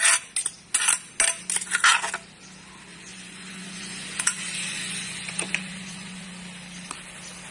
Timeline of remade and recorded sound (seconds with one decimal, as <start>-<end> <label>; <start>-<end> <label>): 0.0-2.9 recorded; 2.9-6.3 remade; 6.3-7.5 recorded